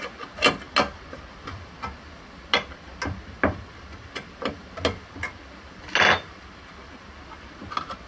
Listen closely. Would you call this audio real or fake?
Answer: real